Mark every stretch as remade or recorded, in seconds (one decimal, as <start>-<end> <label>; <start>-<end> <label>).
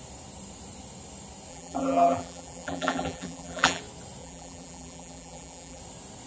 0.0-1.5 recorded; 1.5-3.8 remade; 3.8-4.2 recorded; 4.2-5.8 remade; 5.8-6.3 recorded